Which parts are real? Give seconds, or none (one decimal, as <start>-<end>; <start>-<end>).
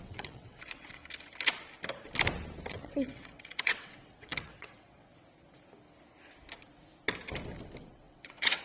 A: 1.0-2.7; 5.1-7.9